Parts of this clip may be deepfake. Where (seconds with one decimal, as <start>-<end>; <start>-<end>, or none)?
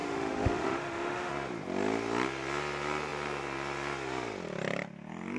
0.0-1.3